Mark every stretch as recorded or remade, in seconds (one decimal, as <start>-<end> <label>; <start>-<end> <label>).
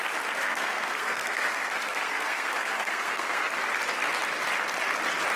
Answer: 0.0-0.4 recorded; 0.4-3.6 remade; 3.6-5.4 recorded